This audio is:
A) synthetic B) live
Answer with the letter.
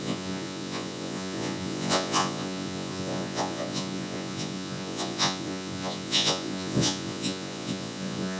A